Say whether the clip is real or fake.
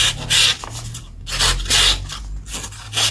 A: real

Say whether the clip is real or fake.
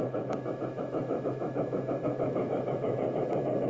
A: fake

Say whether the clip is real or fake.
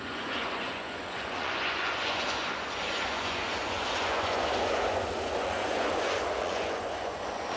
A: fake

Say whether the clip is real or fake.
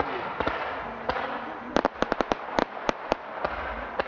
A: real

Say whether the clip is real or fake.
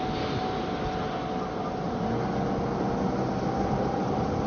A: real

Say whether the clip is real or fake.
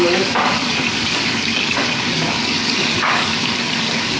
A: fake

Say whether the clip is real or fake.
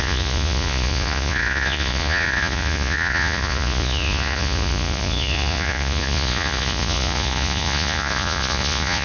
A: fake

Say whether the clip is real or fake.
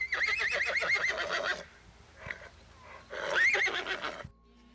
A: real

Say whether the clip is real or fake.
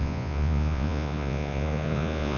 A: fake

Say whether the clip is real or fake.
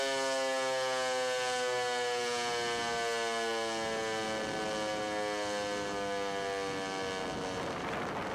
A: real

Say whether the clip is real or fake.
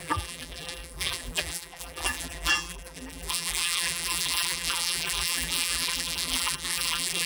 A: fake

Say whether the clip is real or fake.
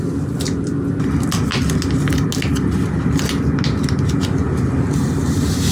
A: real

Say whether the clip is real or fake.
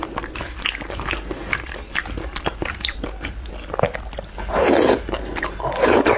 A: real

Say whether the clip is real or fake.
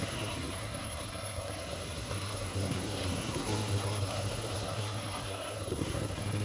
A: fake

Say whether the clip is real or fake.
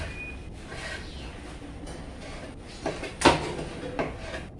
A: real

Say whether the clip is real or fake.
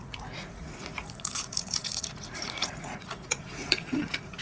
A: fake